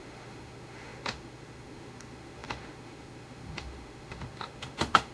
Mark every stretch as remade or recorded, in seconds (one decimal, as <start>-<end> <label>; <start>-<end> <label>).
0.0-5.1 remade